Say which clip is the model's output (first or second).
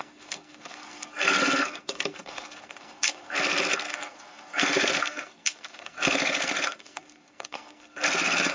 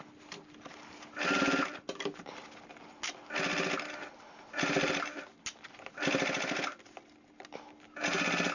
first